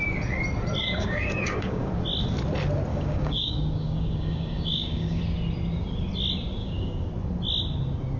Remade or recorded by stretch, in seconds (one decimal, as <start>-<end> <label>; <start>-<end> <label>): 0.0-0.8 recorded; 0.8-1.9 remade; 1.9-2.9 recorded; 2.9-5.2 remade; 5.2-6.6 recorded; 6.6-7.1 remade; 7.1-8.2 recorded